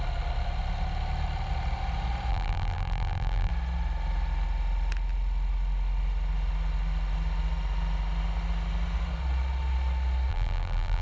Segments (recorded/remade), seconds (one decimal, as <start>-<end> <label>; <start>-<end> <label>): 0.0-2.3 recorded; 2.3-3.5 remade; 3.5-10.3 recorded; 10.3-11.0 remade